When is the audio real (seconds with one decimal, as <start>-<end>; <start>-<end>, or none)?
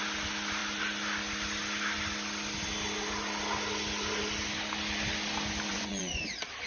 0.0-5.7; 6.2-6.7